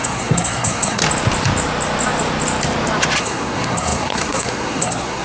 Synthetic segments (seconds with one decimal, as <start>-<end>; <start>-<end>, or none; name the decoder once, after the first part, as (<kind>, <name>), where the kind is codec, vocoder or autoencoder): 0.0-1.0 (codec, SNAC); 3.2-5.2